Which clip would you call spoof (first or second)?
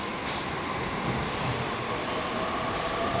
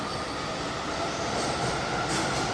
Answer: first